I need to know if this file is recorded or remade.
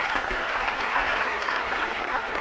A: remade